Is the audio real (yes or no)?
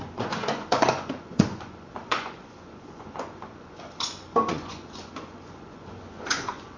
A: no